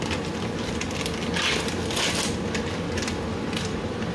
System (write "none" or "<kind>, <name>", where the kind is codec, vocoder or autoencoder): none